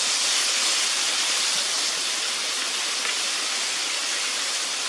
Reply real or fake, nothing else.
real